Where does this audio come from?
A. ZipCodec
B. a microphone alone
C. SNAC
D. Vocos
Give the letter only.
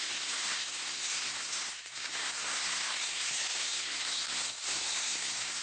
C